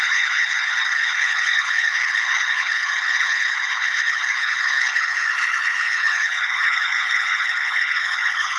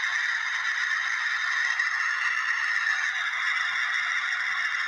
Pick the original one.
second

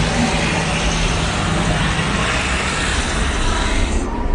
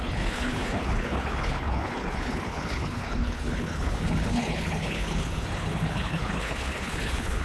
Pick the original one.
first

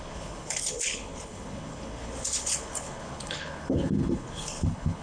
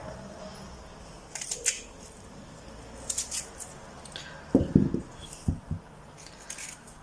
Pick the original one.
second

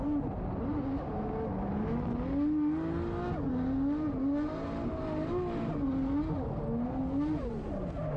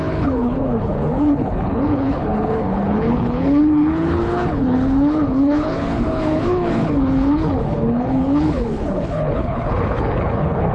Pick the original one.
first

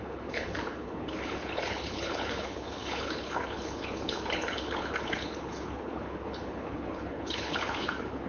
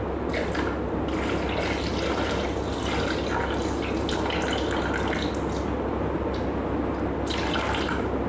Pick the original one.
second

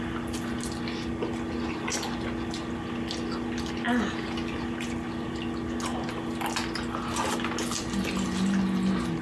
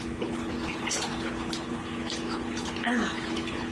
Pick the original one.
first